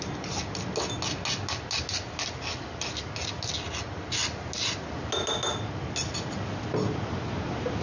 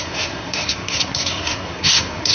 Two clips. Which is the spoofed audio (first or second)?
second